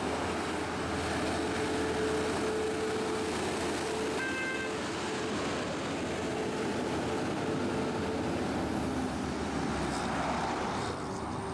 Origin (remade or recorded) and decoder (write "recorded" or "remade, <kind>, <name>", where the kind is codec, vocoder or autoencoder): recorded